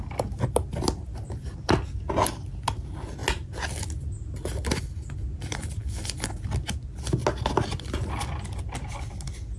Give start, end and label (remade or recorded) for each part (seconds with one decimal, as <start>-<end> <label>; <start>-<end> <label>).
0.0-9.6 recorded